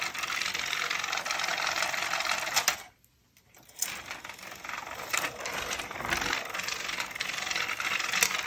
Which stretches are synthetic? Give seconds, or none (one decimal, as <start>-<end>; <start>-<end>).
none